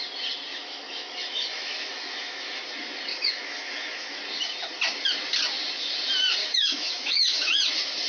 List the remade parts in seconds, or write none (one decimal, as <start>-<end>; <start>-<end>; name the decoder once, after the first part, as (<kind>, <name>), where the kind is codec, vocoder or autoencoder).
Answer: 0.5-2.6 (autoencoder, DAC-VAE); 3.1-4.2; 6.4-7.5